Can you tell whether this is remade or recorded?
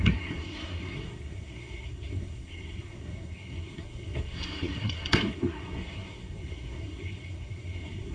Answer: remade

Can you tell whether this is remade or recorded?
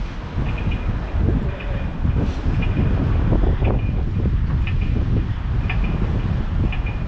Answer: recorded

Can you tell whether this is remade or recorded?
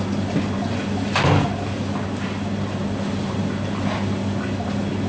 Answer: recorded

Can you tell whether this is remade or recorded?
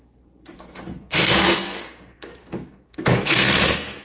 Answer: remade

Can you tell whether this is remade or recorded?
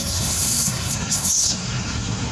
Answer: remade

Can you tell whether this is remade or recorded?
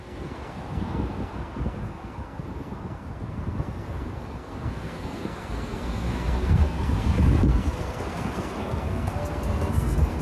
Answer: remade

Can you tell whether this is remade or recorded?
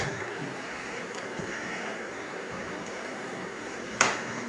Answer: remade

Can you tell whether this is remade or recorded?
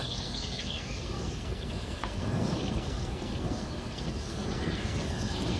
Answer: remade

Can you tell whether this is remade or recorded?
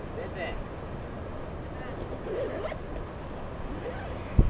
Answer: recorded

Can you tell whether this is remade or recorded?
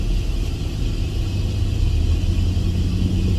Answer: recorded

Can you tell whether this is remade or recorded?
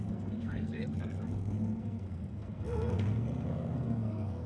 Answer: remade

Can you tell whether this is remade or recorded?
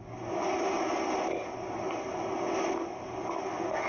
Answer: recorded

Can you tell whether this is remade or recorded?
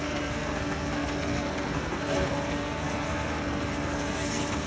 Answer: remade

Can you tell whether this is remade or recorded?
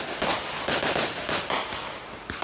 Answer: recorded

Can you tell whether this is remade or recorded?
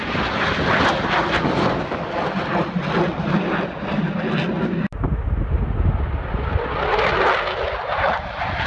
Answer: recorded